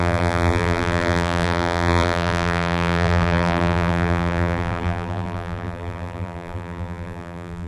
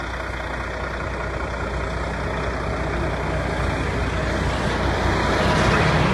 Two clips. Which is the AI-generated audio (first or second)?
first